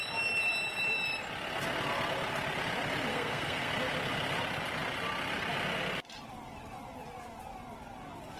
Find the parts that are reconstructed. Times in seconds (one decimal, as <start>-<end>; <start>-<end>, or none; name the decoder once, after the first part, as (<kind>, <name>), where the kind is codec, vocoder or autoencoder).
3.1-3.7 (codec, SNAC)